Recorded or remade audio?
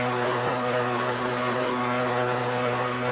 remade